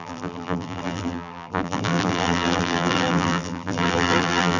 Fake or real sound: fake